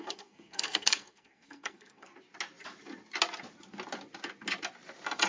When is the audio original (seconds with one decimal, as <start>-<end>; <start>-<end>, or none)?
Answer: 2.1-5.3